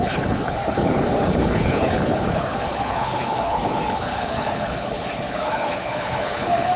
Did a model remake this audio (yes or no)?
yes